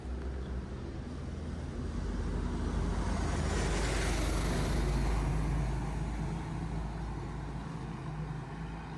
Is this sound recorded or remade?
recorded